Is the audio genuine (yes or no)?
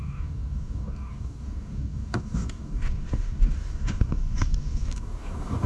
no